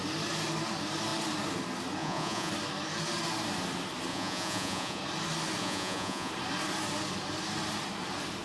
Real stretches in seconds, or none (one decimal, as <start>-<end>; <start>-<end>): 0.0-2.0; 2.5-4.1; 5.0-5.6; 6.3-8.4